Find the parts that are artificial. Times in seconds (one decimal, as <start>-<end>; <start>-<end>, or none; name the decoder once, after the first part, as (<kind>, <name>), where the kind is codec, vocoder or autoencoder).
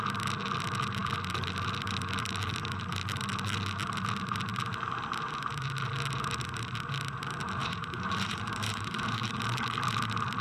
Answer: 7.6-9.3 (vocoder, BigVGAN v2)